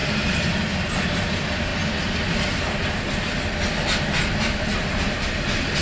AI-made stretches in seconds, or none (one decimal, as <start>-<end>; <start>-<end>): none